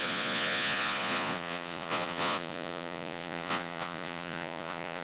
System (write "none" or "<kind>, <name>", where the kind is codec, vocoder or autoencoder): vocoder, Vocos